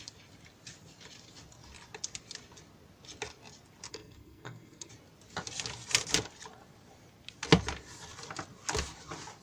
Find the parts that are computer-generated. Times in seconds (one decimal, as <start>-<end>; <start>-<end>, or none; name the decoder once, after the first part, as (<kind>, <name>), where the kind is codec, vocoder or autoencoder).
3.9-4.9 (codec, SNAC)